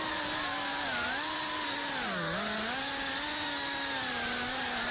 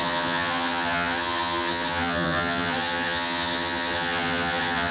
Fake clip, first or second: second